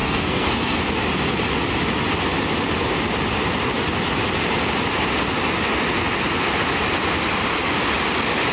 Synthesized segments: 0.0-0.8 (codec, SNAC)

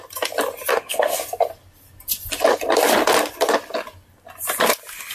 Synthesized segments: 0.7-1.2 (codec, SNAC)